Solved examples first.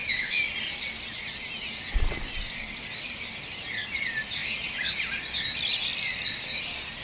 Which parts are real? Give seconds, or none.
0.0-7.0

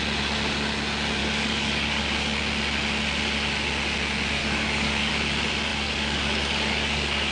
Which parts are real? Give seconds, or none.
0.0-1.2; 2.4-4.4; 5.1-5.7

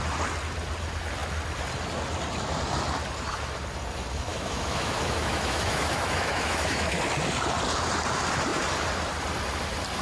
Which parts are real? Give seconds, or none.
0.0-4.3; 7.0-10.0

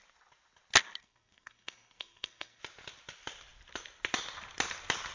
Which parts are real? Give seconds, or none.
0.0-1.0; 2.6-5.1

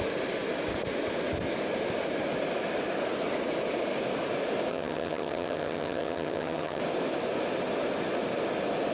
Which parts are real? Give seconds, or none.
0.0-4.7; 6.8-8.9

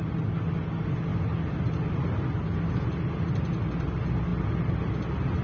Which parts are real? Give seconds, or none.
0.0-5.4